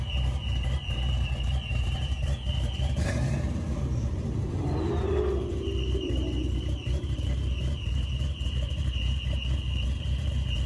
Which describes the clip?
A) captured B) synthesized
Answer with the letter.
B